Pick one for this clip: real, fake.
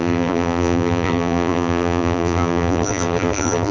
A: fake